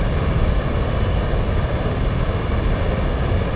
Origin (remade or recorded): recorded